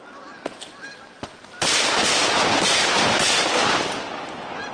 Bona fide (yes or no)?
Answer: yes